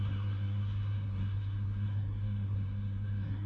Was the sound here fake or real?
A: fake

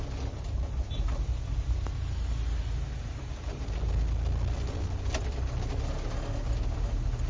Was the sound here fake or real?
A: real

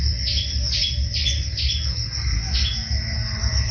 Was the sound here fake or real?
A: real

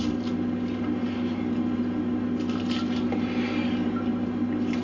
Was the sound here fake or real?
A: real